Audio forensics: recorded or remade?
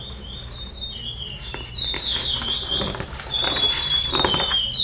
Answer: remade